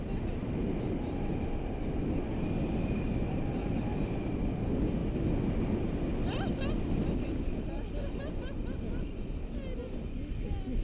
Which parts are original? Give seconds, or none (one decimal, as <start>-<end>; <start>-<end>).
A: 0.0-10.8